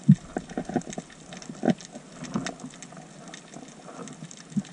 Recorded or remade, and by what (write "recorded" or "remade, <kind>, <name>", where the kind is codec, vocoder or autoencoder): recorded